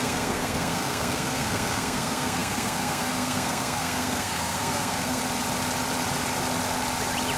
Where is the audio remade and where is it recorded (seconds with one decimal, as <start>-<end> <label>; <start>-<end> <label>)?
0.0-5.2 remade; 5.2-7.4 recorded